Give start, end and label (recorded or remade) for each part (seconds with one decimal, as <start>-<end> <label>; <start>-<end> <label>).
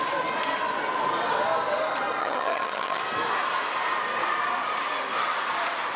0.0-2.2 recorded; 2.2-3.0 remade; 3.0-6.0 recorded